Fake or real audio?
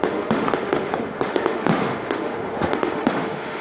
fake